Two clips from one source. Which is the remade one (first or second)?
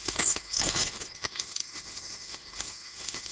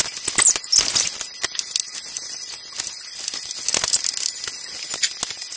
first